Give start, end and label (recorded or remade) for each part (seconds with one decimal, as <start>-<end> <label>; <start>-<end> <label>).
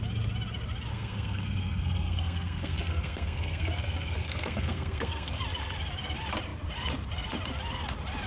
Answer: 0.0-0.9 recorded; 0.9-5.4 remade; 5.4-8.3 recorded